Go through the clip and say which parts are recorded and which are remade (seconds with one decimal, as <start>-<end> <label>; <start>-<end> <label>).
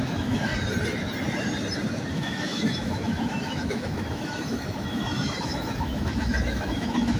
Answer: 0.0-0.5 remade; 0.5-2.1 recorded; 2.1-7.2 remade